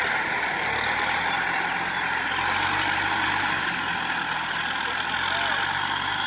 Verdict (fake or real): real